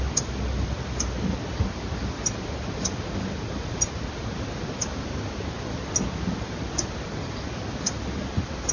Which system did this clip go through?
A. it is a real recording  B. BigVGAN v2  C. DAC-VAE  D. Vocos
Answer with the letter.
A